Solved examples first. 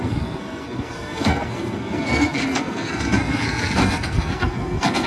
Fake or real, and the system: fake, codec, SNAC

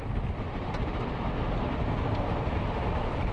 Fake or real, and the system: real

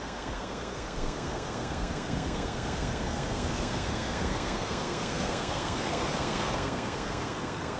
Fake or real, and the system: fake, codec, SNAC